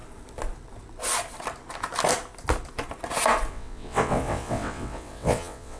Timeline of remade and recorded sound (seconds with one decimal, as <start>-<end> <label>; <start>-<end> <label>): 0.0-3.5 recorded; 3.5-5.8 remade